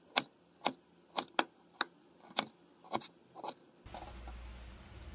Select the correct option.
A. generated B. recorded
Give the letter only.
B